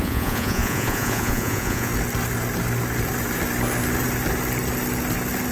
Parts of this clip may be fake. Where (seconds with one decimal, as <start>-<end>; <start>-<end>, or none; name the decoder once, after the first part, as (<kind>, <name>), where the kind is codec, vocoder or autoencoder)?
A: 0.0-1.9 (vocoder, Vocos)